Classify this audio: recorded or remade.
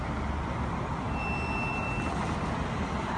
recorded